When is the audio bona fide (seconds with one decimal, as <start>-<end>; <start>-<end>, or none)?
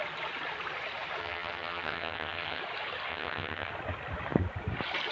0.0-1.2; 2.6-3.1; 3.7-5.1